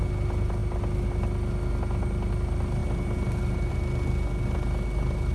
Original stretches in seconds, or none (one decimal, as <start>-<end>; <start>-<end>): 0.0-5.3

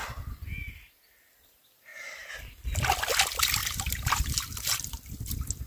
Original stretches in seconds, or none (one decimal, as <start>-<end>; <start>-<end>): 0.0-1.9; 2.5-3.6; 4.3-5.7

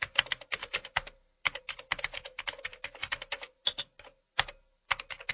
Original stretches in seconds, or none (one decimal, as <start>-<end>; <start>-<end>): 0.0-5.3

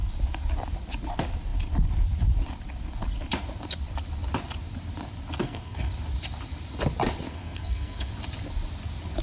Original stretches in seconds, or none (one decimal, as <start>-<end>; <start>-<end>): 0.0-5.4; 5.9-7.3; 8.1-9.2

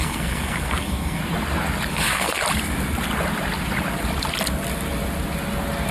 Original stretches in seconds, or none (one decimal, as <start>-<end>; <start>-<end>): 1.2-1.9; 2.4-5.9

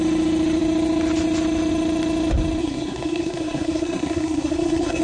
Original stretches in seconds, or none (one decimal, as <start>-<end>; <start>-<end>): 0.0-2.6

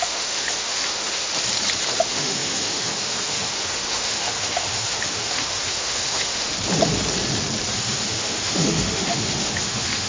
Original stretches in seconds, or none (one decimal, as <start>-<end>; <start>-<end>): 1.3-2.0; 6.5-7.7